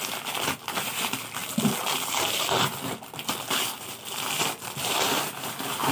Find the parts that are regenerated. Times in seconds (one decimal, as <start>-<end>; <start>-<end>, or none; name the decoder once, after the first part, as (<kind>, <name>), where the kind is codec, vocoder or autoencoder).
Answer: none